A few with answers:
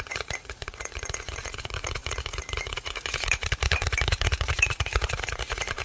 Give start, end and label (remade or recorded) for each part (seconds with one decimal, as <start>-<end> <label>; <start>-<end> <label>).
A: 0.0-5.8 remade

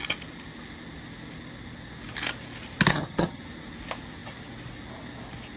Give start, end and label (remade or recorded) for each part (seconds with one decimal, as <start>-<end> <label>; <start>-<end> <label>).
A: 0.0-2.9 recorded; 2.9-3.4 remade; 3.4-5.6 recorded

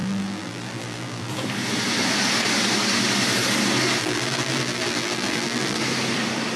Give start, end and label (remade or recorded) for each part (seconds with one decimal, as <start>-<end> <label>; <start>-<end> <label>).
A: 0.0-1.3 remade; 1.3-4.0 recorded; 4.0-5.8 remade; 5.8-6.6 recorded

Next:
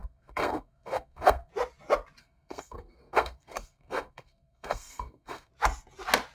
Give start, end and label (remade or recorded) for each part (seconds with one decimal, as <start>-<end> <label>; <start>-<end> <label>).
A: 0.0-1.5 remade; 1.5-2.2 recorded; 2.2-5.5 remade; 5.5-6.3 recorded

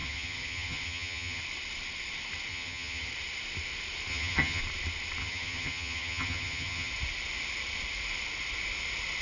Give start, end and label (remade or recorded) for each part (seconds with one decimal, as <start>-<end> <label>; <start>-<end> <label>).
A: 0.0-1.4 remade; 1.4-2.5 recorded; 2.5-3.1 remade; 3.1-4.1 recorded; 4.1-4.6 remade; 4.6-5.2 recorded; 5.2-6.9 remade; 6.9-9.2 recorded

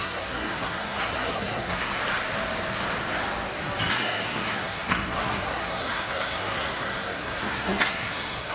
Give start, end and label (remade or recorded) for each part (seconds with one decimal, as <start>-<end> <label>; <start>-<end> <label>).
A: 0.0-2.0 remade; 2.0-3.9 recorded; 3.9-8.5 remade

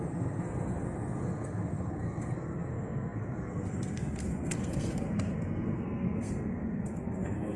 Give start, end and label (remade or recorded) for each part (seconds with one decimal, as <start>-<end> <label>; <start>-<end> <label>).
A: 0.0-7.6 remade

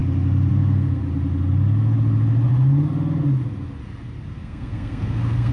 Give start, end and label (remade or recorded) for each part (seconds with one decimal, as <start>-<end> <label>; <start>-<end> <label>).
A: 0.0-0.5 recorded; 0.5-1.0 remade; 1.0-4.3 recorded; 4.3-5.5 remade